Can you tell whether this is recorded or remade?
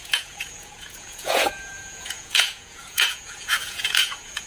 remade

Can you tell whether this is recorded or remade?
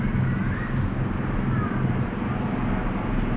recorded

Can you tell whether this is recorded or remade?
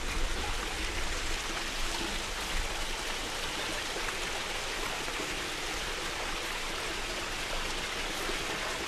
recorded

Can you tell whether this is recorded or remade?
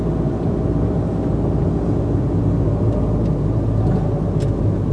recorded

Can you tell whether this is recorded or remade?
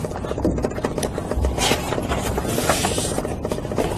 recorded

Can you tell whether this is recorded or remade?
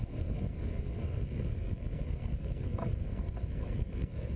remade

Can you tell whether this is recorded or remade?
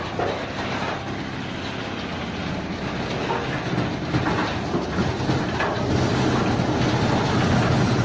recorded